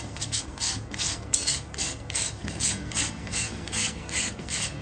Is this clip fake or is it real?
fake